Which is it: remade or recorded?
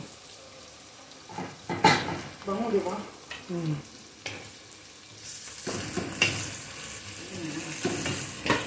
recorded